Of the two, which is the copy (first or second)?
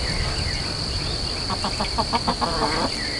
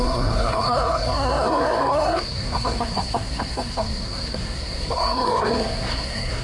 second